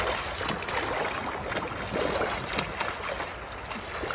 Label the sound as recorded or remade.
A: recorded